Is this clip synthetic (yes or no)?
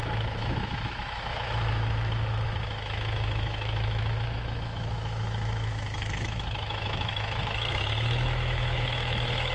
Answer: yes